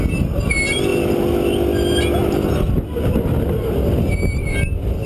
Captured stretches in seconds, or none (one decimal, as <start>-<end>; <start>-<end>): 0.0-5.1

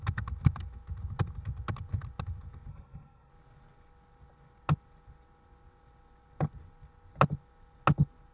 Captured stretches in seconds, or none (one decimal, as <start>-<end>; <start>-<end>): 0.0-2.7; 3.3-8.3

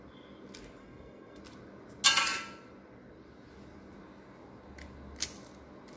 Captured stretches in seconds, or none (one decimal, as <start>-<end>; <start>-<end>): 0.0-0.8; 1.4-6.0

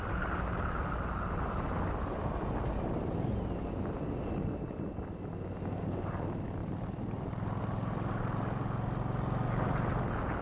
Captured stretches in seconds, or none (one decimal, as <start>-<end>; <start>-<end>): 0.0-6.6; 7.6-10.4

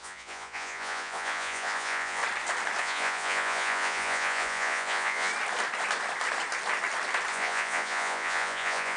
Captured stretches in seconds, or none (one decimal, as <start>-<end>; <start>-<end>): 2.2-2.8; 5.3-7.3

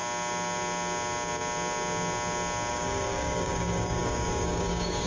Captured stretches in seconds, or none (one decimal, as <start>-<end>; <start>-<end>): 0.0-2.7